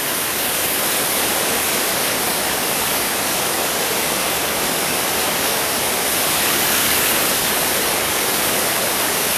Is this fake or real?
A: fake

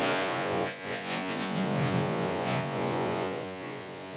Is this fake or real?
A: fake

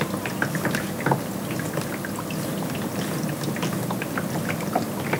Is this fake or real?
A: real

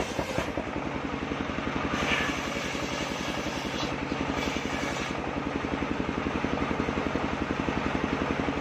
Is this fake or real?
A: real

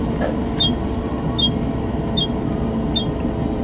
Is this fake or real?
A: real